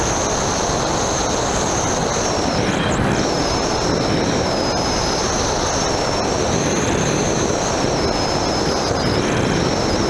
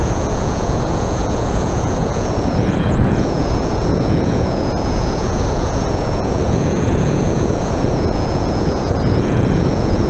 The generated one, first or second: second